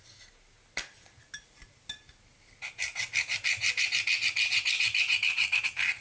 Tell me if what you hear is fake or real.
real